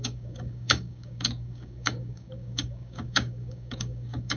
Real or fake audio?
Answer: fake